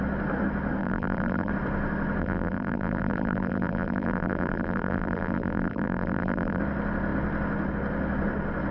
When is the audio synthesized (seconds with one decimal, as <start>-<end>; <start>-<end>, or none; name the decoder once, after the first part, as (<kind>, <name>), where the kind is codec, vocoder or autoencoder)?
0.8-1.5 (vocoder, BigVGAN v2); 2.2-6.6